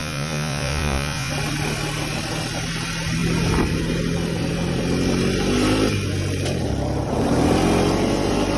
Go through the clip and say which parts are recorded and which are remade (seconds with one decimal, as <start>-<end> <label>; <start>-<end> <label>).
0.0-1.3 remade; 1.3-8.6 recorded